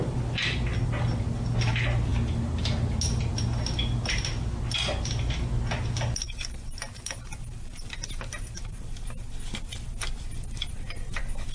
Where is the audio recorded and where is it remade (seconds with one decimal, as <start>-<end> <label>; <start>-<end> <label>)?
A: 0.0-11.5 recorded